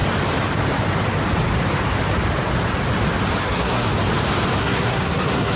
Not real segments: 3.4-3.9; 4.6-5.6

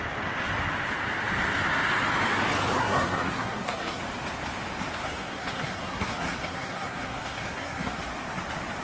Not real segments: 2.8-4.0; 5.0-8.0